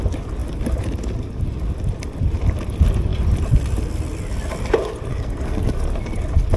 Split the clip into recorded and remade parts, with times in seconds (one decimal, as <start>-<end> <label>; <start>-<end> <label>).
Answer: 0.0-5.1 recorded; 5.1-5.7 remade; 5.7-6.6 recorded